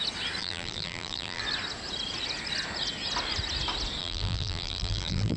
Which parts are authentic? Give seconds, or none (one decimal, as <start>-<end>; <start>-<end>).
0.0-0.4; 1.4-4.0

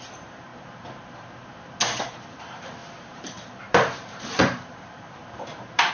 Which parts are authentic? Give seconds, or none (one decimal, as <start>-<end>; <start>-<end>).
0.5-2.0

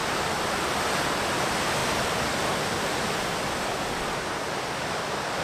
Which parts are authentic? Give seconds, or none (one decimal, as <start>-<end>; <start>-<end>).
0.0-5.4

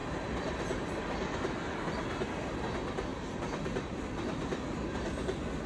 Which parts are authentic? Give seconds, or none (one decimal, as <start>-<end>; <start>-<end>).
1.0-3.1; 4.0-5.7

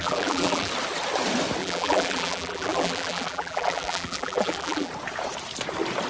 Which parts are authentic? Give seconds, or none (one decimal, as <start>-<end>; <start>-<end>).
0.7-1.6; 4.9-6.1

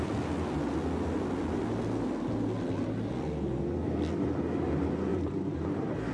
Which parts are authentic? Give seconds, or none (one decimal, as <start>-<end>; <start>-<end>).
0.0-5.1